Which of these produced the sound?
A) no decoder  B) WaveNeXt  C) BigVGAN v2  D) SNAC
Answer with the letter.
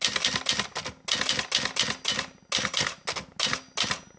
A